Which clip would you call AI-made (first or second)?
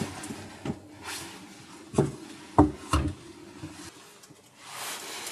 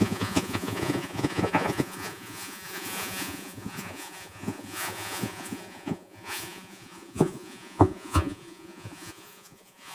second